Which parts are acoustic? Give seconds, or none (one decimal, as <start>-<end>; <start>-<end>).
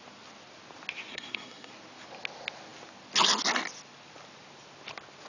0.0-1.1; 1.7-5.3